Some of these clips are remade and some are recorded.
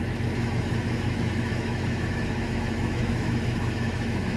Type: remade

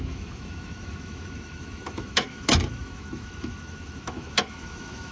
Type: remade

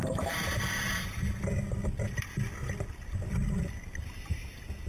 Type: recorded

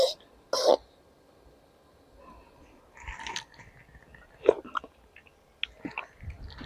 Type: recorded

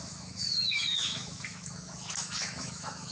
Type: remade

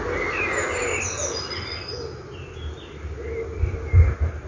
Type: recorded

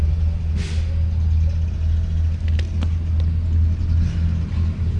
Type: recorded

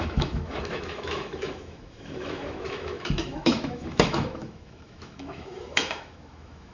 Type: remade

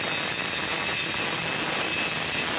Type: recorded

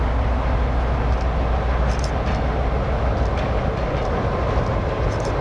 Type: recorded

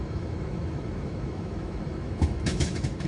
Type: remade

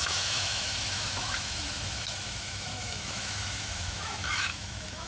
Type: remade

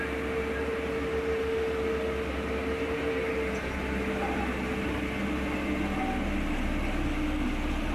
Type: recorded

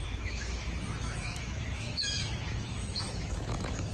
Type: remade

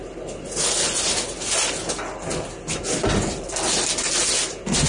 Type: recorded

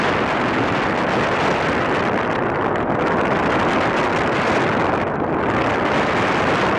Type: recorded